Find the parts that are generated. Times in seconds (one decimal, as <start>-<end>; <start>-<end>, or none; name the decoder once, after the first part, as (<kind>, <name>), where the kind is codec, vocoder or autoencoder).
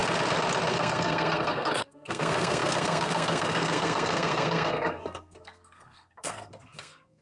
0.7-7.2 (codec, SNAC)